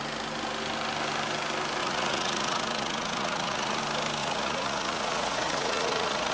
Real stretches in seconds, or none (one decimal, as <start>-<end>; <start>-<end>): 0.0-1.8; 3.8-4.2